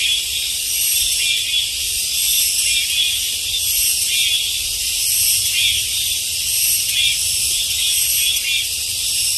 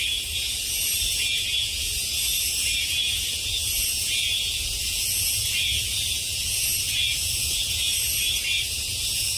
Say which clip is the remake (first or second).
second